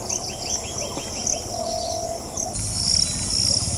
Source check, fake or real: real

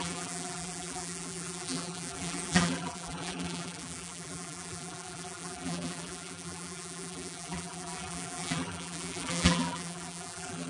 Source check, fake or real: fake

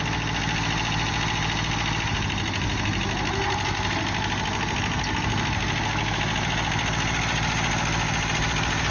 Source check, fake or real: real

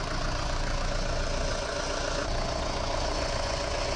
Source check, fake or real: fake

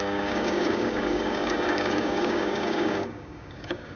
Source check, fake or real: fake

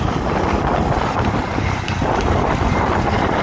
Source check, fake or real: real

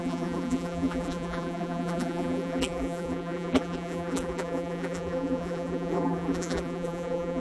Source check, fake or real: fake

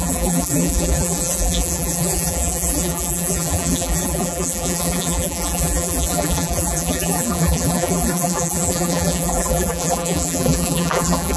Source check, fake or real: fake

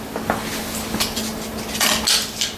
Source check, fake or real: real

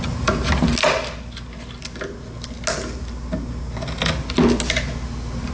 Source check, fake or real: real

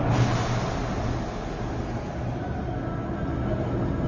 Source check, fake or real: real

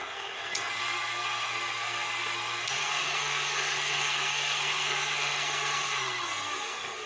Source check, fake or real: fake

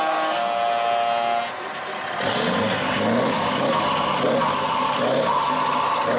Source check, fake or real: real